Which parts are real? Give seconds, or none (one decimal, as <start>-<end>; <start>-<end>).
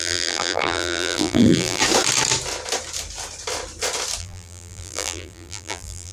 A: 1.8-4.2